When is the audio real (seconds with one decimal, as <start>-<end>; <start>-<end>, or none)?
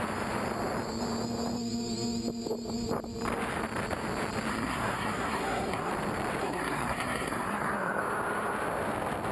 0.0-4.5; 5.9-6.4; 8.0-9.3